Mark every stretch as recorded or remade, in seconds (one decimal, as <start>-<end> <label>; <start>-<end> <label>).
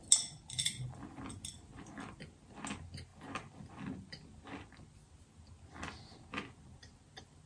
0.0-7.5 recorded